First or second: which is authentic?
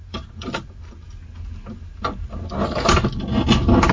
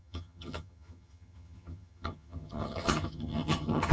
first